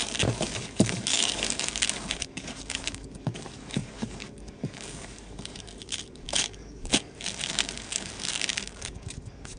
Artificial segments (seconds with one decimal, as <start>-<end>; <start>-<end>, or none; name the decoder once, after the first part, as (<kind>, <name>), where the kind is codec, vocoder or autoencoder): 0.0-9.6 (codec, DAC)